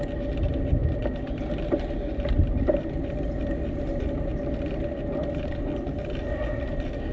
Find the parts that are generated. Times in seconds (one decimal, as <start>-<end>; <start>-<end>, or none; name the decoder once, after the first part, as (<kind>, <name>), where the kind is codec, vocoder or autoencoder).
none